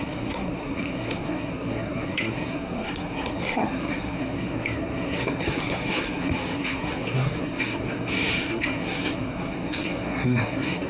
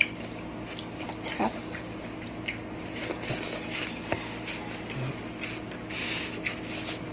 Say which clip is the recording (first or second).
second